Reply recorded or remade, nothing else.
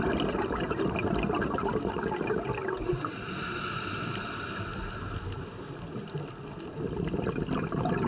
recorded